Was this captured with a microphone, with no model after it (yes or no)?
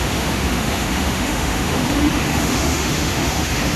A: no